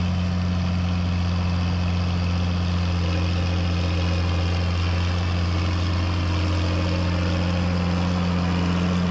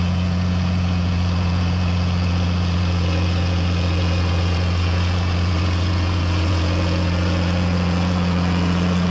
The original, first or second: first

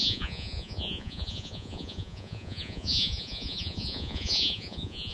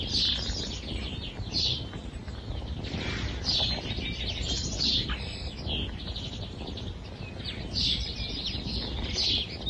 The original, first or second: second